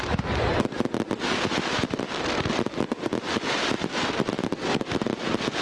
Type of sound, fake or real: real